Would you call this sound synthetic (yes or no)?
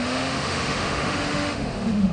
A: yes